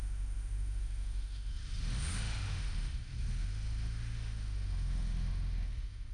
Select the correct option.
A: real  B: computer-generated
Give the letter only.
B